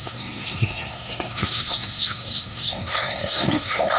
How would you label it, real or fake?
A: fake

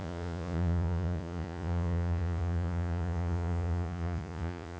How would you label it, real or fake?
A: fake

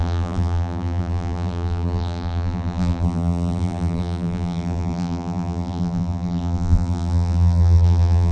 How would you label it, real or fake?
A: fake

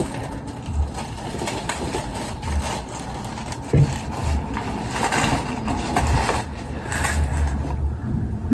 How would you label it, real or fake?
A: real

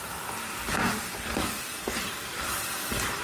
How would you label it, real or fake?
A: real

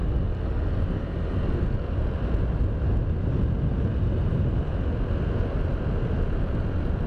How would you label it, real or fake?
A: real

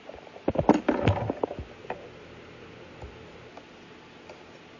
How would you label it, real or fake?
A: real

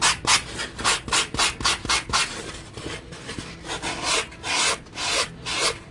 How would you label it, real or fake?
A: real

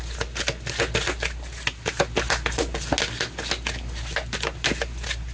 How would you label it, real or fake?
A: real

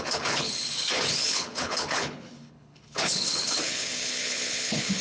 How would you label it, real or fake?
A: fake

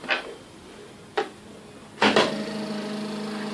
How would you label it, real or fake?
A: real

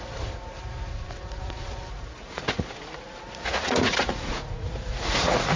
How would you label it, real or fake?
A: fake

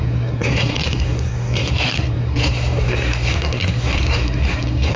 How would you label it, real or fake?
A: fake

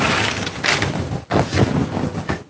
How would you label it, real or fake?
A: real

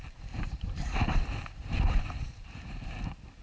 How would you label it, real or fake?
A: fake